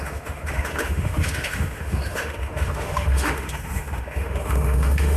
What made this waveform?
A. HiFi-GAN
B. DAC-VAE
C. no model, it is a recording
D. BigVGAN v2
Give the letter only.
B